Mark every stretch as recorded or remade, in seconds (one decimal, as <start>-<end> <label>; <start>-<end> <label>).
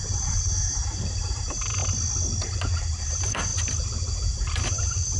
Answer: 0.0-1.8 remade; 1.8-2.8 recorded; 2.8-3.5 remade; 3.5-4.3 recorded; 4.3-5.2 remade